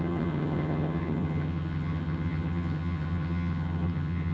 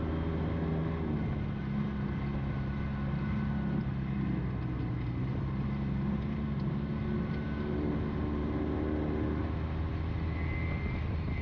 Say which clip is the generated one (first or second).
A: first